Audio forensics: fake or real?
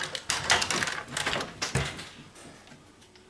real